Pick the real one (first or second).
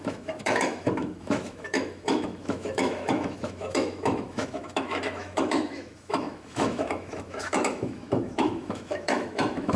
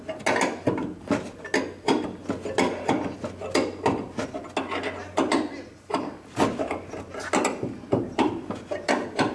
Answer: second